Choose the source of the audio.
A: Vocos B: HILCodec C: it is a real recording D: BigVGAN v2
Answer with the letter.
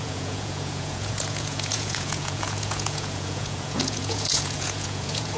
A